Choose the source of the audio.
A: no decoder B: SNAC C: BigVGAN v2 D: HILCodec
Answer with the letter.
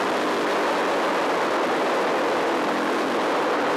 A